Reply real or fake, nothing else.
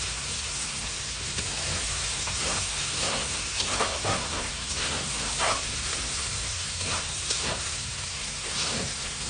fake